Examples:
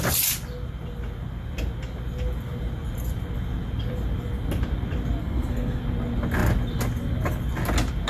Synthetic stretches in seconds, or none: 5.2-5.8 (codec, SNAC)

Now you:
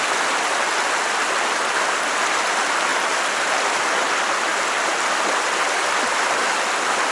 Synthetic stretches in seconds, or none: none

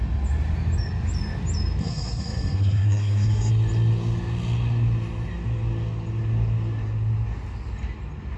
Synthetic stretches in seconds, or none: 1.8-3.5 (codec, SNAC)

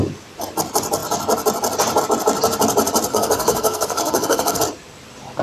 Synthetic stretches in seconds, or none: 3.1-4.6 (codec, SNAC)